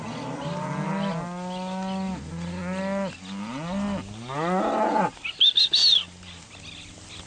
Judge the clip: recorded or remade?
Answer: recorded